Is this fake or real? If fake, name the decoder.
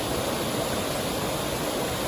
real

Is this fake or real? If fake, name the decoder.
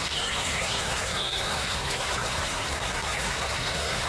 fake, codec, SNAC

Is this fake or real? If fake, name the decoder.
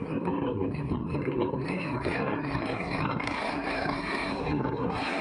fake, codec, SNAC